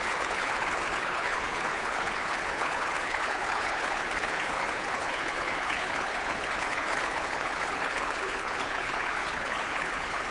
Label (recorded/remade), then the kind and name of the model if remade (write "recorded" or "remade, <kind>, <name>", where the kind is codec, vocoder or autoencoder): remade, codec, HILCodec